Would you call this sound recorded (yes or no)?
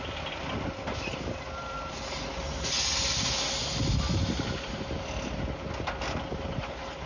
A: yes